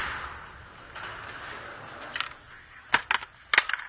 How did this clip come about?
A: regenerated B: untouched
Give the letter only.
B